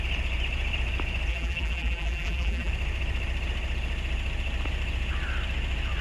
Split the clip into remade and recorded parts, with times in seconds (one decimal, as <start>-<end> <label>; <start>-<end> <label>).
0.0-1.3 recorded; 1.3-2.7 remade; 2.7-6.0 recorded